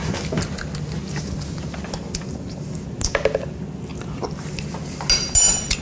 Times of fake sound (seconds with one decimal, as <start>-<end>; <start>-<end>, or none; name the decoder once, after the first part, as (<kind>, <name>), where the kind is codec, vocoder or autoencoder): none